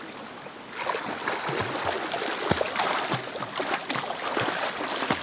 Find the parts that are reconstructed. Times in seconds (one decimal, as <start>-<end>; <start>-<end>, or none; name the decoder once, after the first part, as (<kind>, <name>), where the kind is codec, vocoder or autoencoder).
none